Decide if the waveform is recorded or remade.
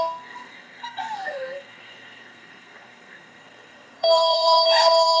remade